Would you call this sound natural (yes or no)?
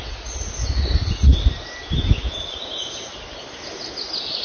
yes